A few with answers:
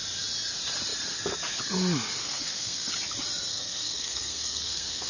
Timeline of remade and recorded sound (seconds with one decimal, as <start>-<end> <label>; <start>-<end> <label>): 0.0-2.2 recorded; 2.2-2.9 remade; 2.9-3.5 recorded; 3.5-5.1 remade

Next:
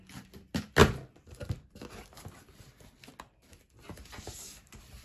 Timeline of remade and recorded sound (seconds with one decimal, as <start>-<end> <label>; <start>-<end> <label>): 0.0-5.0 recorded

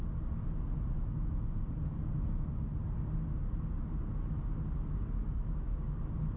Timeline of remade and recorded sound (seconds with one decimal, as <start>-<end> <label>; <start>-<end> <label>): 0.0-5.2 recorded; 5.2-6.0 remade; 6.0-6.4 recorded

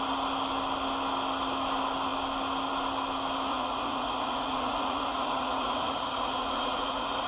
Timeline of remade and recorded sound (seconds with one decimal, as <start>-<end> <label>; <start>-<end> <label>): 0.0-3.5 recorded; 3.5-7.3 remade

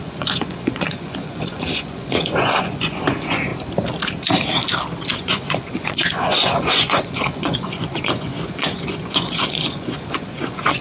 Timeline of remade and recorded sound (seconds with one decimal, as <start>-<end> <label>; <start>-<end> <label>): 0.0-3.5 remade; 3.5-5.1 recorded; 5.1-10.8 remade

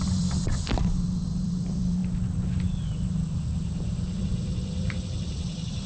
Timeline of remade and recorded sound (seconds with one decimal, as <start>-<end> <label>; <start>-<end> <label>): 0.0-2.0 remade; 2.0-4.2 recorded; 4.2-5.9 remade

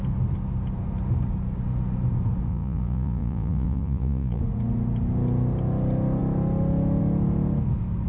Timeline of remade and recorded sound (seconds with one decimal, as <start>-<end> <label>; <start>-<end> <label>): 0.0-2.5 recorded; 2.5-4.4 remade; 4.4-8.1 recorded